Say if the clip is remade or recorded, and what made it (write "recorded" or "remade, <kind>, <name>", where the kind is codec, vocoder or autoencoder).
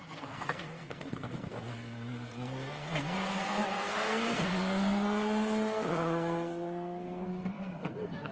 remade, codec, SNAC